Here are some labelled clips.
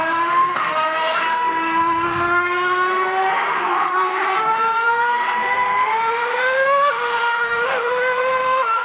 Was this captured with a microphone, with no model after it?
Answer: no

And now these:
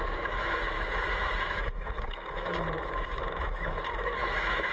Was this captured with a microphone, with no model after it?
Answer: no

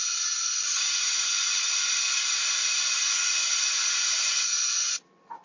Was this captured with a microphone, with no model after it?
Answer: yes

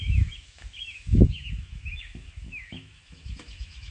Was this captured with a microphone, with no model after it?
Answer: no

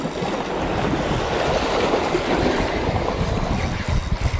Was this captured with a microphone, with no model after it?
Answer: yes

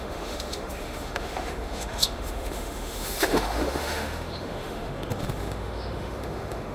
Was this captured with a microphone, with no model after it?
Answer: no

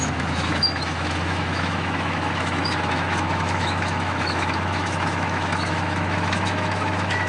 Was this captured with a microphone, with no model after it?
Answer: no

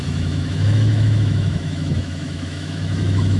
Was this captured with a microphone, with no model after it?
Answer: no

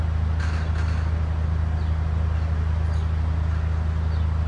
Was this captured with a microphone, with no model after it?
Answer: yes